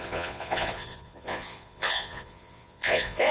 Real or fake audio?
fake